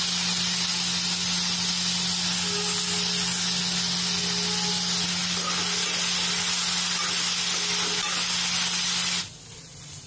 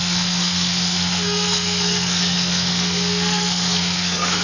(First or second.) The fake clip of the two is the second